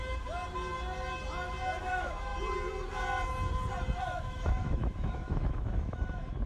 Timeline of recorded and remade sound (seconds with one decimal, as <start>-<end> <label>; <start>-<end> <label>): 0.0-1.8 recorded; 1.8-2.3 remade; 2.3-4.0 recorded; 4.0-6.5 remade

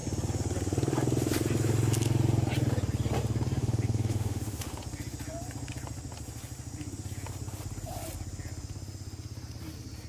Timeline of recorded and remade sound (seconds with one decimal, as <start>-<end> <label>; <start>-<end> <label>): 0.0-3.6 recorded; 3.6-4.8 remade; 4.8-10.1 recorded

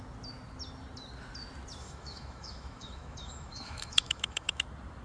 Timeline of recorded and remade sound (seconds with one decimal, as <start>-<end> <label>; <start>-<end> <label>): 0.0-1.8 recorded; 1.8-4.6 remade; 4.6-5.0 recorded

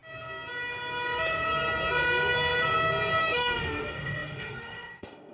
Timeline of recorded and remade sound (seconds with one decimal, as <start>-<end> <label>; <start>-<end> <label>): 0.0-3.2 recorded; 3.2-5.3 remade

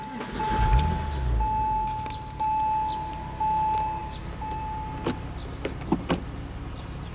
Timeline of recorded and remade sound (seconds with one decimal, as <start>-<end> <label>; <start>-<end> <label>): 0.0-7.1 recorded

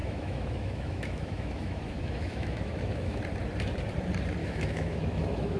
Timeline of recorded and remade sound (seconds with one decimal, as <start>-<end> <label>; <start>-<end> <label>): 0.0-3.2 remade; 3.2-4.4 recorded; 4.4-5.6 remade

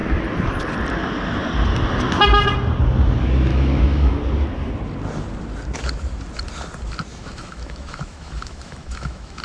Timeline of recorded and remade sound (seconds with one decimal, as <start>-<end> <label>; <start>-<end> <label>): 0.0-3.5 recorded; 3.5-4.2 remade; 4.2-7.1 recorded; 7.1-9.4 remade

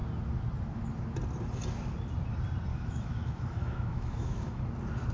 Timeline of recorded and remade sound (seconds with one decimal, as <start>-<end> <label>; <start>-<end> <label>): 0.0-2.7 recorded; 2.7-4.6 remade; 4.6-5.1 recorded